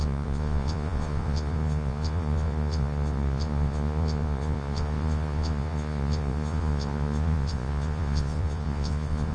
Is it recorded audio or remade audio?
remade